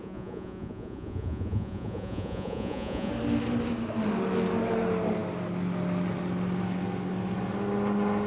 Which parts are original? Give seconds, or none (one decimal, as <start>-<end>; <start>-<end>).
3.1-8.3